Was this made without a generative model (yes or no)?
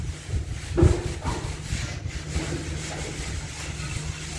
yes